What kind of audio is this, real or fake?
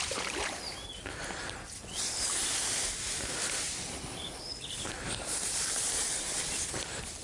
real